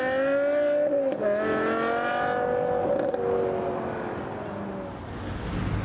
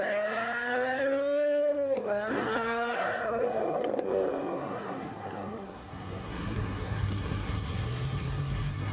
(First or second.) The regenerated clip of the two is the second